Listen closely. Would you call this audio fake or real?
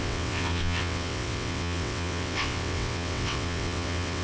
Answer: fake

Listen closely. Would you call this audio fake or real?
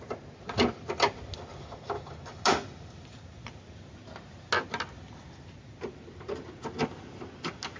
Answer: real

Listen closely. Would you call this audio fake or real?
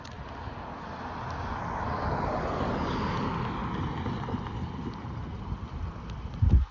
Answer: real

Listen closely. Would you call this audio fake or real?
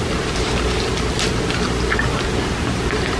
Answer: real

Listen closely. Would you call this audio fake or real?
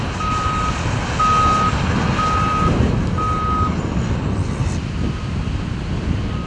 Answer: real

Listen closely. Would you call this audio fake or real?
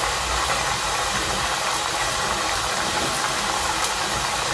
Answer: fake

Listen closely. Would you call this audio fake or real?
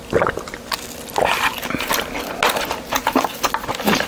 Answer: real